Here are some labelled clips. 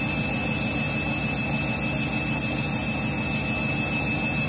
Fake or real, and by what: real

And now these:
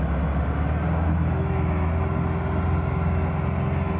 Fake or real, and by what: real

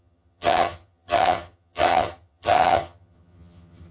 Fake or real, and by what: fake, vocoder, HiFi-GAN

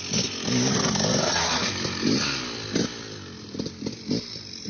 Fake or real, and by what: real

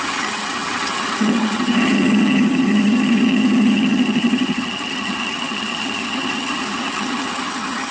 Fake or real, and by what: fake, vocoder, HiFi-GAN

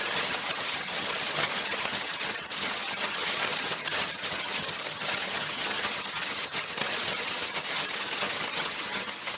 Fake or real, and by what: fake, vocoder, HiFi-GAN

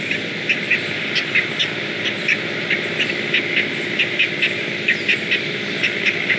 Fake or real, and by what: real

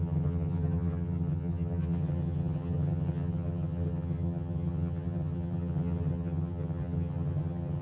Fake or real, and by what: fake, vocoder, HiFi-GAN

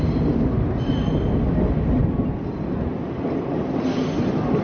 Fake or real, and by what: real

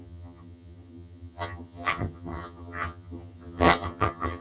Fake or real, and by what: fake, vocoder, HiFi-GAN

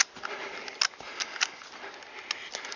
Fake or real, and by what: real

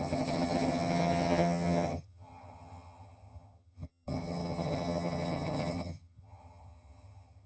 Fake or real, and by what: fake, vocoder, HiFi-GAN